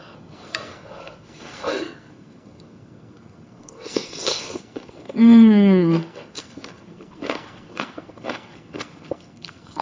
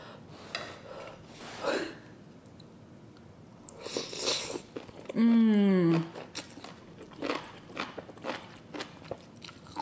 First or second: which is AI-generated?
first